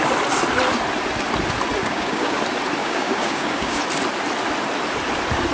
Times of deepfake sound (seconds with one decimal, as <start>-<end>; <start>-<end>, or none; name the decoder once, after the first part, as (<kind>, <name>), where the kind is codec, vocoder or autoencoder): 1.8-2.4 (codec, DAC); 2.8-3.8